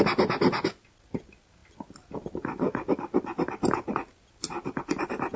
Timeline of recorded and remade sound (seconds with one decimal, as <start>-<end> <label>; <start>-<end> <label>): 0.0-5.4 recorded